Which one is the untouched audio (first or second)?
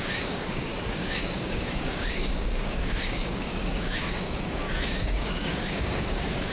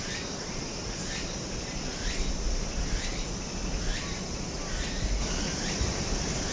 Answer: second